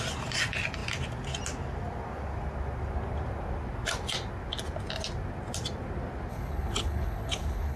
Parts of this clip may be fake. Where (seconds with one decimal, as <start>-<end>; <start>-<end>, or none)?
6.3-7.8